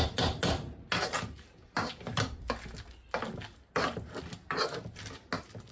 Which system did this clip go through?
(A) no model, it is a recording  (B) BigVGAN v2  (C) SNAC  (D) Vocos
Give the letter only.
A